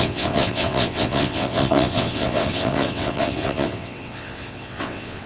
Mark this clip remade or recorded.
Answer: remade